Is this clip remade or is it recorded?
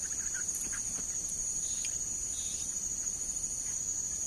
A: recorded